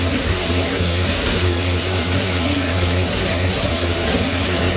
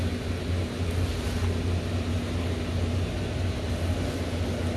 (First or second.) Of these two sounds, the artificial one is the first